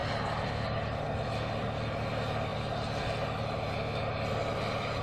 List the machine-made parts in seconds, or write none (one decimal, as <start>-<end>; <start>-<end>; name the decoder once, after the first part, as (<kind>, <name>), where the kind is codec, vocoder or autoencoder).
none